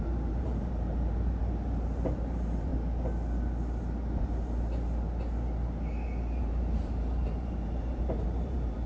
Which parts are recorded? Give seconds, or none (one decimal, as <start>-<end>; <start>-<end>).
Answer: 2.7-6.4